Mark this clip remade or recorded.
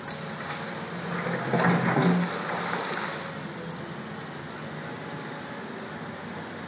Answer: recorded